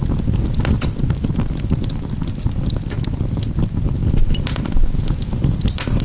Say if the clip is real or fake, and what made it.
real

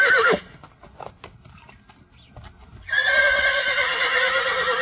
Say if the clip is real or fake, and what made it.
real